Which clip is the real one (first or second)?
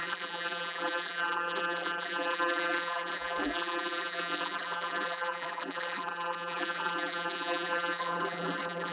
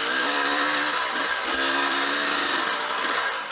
second